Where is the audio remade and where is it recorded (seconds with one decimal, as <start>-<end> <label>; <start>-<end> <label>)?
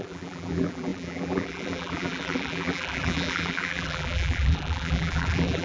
0.0-5.6 remade